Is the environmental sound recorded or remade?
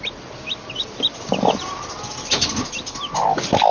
recorded